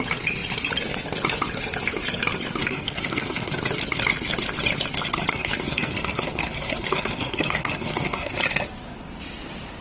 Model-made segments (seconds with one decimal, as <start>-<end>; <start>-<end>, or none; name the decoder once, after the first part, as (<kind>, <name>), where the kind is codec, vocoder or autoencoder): 2.6-3.6 (codec, SNAC); 5.3-8.3